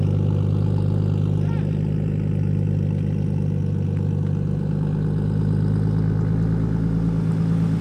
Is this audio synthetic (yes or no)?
no